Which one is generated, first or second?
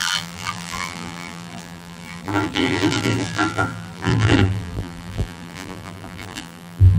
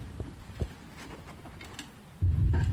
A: first